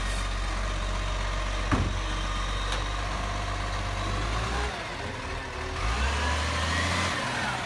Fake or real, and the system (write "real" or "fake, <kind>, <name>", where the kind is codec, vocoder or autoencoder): real